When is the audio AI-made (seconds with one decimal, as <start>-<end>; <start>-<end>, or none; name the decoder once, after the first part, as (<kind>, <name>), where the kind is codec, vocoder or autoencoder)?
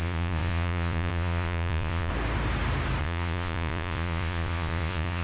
0.0-2.1 (vocoder, Vocos); 3.0-5.2